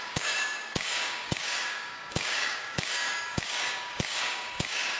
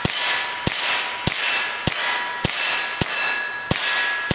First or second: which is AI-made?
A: first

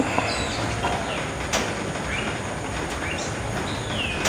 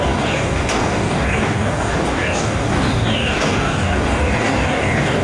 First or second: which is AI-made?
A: second